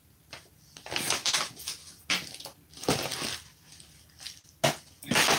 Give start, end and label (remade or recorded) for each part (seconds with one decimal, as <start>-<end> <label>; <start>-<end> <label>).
0.0-5.4 recorded